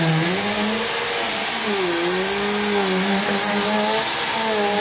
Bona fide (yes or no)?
yes